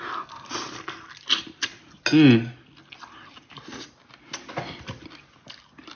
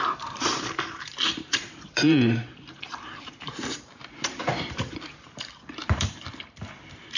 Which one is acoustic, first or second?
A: first